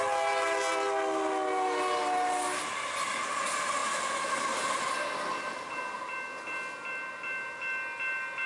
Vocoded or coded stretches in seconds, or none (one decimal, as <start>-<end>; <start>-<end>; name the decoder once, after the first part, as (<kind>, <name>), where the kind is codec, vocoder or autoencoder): none